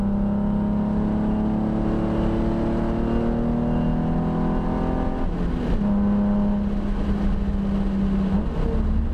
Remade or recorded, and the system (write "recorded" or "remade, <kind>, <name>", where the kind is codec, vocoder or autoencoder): recorded